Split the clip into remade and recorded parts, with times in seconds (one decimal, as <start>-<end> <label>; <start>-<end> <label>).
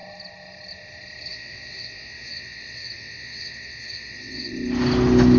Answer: 0.0-1.3 recorded; 1.3-4.5 remade; 4.5-5.4 recorded